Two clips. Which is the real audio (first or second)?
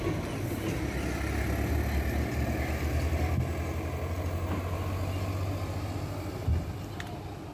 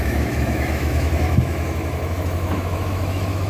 first